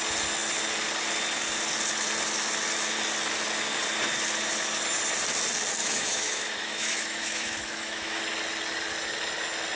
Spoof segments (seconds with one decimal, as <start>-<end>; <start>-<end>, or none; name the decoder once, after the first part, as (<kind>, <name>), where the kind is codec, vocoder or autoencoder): 5.8-8.2 (autoencoder, DAC-VAE)